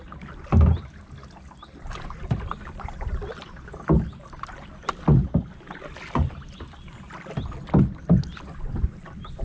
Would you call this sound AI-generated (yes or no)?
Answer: no